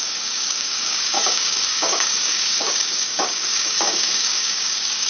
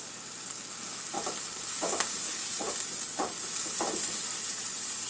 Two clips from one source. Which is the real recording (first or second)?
second